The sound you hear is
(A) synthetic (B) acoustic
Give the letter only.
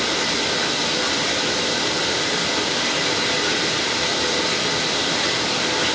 B